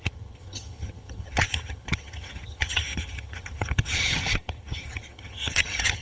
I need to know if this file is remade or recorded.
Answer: remade